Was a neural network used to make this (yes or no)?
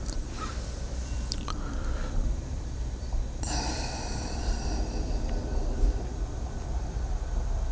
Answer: yes